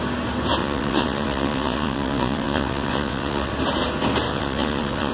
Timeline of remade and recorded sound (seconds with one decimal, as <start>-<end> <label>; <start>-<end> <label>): 0.0-0.6 recorded; 0.6-3.5 remade; 3.5-4.3 recorded; 4.3-5.1 remade